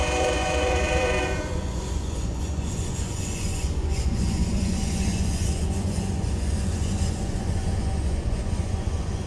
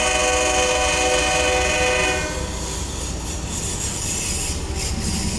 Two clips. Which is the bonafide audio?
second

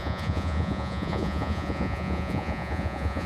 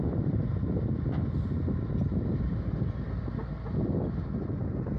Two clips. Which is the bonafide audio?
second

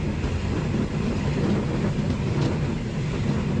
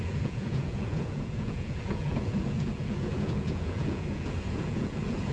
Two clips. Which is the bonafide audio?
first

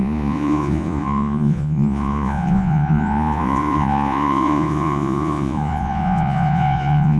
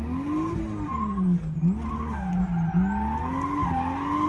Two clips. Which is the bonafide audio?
second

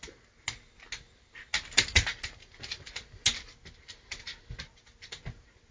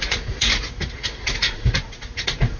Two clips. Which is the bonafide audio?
first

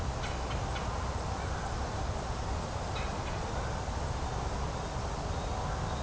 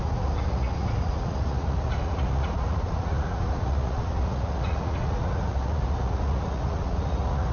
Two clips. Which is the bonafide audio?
first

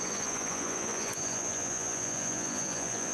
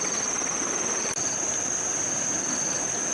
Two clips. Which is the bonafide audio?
second